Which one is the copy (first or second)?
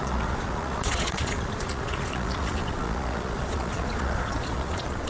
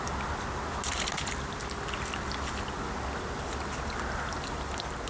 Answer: first